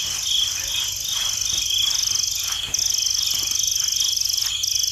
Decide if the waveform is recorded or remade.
recorded